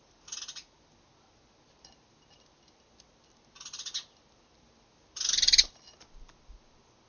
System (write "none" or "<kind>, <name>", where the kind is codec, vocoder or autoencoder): none